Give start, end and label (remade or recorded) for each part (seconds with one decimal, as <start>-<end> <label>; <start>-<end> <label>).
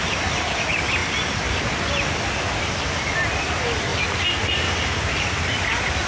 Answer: 0.0-6.1 recorded